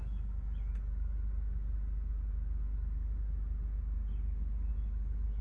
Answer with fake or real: real